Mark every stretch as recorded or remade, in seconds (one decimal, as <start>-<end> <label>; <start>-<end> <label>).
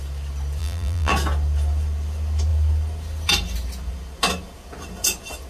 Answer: 0.0-0.6 recorded; 0.6-1.1 remade; 1.1-5.5 recorded